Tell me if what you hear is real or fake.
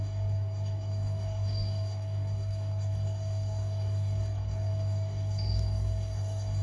fake